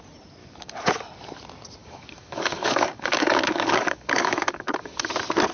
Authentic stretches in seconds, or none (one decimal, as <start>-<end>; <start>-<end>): 0.0-0.4; 0.9-1.8; 5.1-5.5